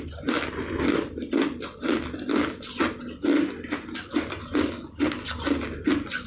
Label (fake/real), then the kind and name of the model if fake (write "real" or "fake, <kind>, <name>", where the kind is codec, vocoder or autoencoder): real